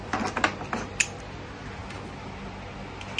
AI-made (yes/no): no